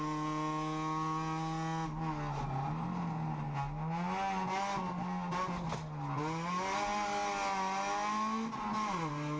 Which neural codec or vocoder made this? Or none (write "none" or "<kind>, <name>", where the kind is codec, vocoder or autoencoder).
none